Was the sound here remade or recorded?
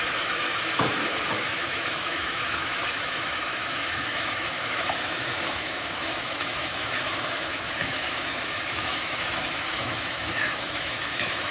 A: remade